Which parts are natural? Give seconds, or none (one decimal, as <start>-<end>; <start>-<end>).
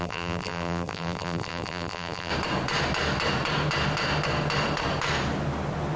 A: 2.3-6.0